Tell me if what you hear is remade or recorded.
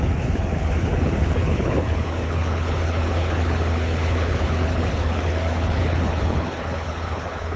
remade